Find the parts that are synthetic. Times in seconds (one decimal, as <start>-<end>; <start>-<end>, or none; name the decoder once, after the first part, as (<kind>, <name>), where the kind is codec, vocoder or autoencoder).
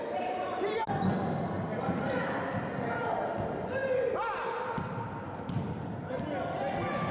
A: none